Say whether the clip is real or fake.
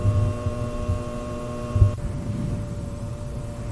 fake